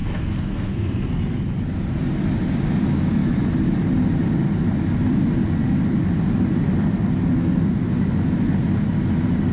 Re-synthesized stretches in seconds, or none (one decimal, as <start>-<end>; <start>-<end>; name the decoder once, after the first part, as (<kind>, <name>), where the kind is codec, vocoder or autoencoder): 0.0-1.2 (codec, SNAC); 7.4-7.9